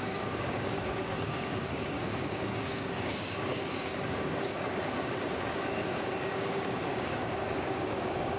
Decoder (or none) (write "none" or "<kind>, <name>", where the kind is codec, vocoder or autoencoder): codec, DAC